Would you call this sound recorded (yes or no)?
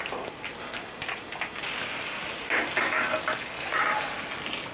yes